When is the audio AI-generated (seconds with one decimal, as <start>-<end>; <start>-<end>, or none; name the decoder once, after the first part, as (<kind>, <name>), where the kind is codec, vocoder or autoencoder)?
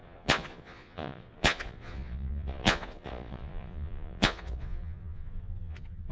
0.0-6.1 (vocoder, Vocos)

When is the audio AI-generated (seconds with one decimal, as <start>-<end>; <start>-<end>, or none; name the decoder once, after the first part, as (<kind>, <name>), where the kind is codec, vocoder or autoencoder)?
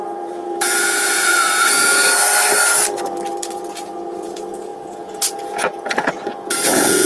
0.0-2.0 (vocoder, Vocos); 3.5-7.1